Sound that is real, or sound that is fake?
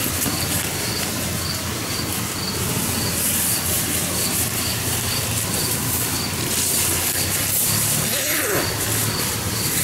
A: real